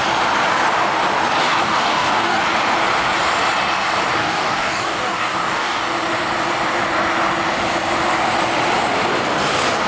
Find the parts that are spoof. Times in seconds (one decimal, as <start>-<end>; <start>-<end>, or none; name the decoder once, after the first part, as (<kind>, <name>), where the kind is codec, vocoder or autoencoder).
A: 1.4-2.4 (codec, DAC); 4.2-5.8